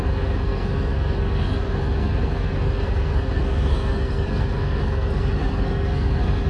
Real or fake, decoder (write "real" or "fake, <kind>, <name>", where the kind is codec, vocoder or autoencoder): fake, codec, SNAC